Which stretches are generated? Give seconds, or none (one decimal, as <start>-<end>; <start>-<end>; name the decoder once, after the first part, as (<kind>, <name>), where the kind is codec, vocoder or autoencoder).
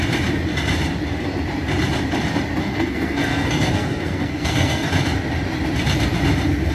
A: 2.6-4.9 (codec, SNAC)